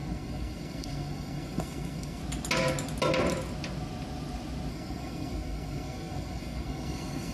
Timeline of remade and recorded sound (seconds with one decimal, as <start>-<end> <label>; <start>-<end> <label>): 0.0-2.2 remade; 2.2-4.7 recorded; 4.7-7.3 remade